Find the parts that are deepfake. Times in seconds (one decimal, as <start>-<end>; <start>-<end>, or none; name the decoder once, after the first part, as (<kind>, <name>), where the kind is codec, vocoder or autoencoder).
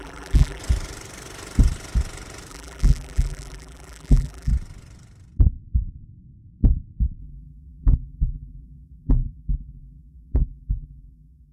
0.0-0.6 (vocoder, BigVGAN v2); 2.5-4.5; 7.2-11.5